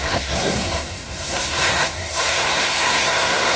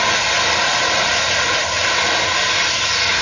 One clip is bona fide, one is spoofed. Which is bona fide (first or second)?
second